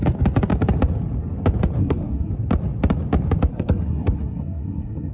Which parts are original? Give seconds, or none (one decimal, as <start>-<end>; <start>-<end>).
0.0-1.8; 2.3-3.5